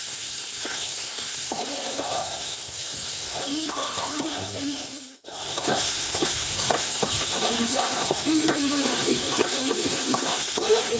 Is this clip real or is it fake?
fake